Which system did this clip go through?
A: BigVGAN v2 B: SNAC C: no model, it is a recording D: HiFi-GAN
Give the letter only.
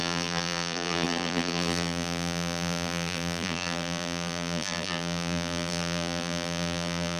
A